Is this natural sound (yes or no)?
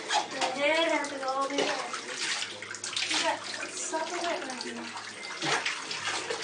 yes